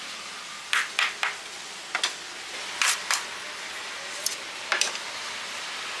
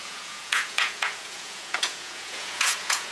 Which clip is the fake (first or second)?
second